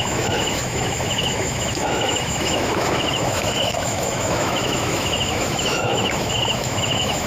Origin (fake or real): fake